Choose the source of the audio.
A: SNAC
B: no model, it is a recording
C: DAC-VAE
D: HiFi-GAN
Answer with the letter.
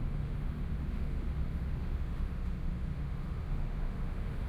C